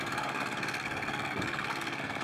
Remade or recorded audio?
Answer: remade